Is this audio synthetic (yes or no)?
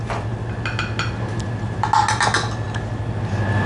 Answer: no